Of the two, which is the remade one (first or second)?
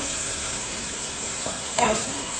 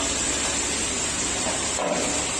first